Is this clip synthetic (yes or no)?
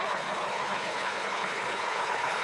yes